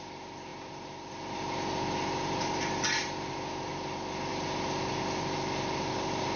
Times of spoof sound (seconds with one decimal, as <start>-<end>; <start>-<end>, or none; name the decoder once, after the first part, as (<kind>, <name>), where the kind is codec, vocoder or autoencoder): none